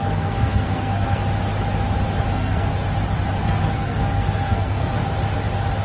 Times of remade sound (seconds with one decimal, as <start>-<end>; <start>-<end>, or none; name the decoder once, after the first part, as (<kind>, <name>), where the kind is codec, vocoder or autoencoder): 0.0-1.2 (codec, SNAC); 2.3-2.7; 3.4-5.0